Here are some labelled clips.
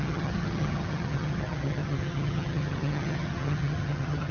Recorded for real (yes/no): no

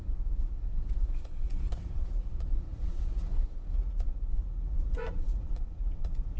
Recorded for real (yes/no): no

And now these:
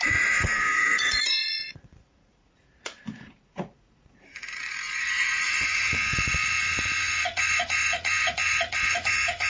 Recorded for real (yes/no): no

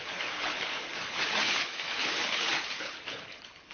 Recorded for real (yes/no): no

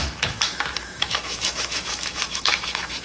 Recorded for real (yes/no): no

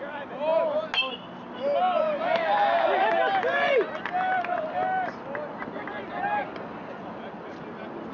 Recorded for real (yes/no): yes